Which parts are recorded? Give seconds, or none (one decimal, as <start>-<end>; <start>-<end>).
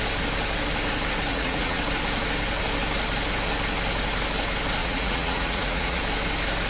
0.0-1.3; 1.8-4.8; 6.0-6.7